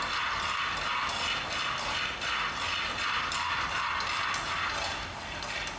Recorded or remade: recorded